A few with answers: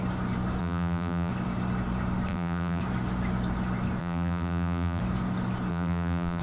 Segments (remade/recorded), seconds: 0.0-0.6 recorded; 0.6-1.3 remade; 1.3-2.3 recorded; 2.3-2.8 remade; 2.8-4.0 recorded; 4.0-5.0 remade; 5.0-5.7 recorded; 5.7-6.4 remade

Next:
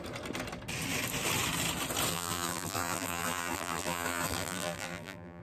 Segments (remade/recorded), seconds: 0.0-2.1 recorded; 2.1-5.4 remade

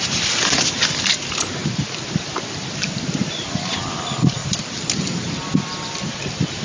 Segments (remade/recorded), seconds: 0.0-4.4 recorded; 4.4-5.9 remade; 5.9-6.6 recorded

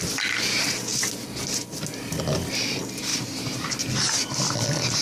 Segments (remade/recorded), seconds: 0.0-3.1 recorded; 3.1-3.7 remade; 3.7-5.0 recorded

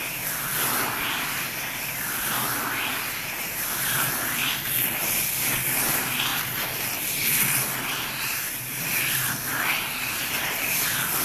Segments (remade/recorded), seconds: 0.0-4.4 remade; 4.4-4.9 recorded; 4.9-11.2 remade

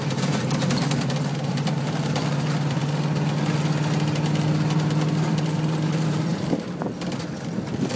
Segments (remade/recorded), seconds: 0.0-2.8 remade; 2.8-5.3 recorded; 5.3-8.0 remade

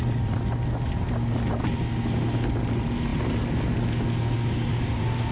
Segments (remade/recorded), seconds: 0.0-5.3 recorded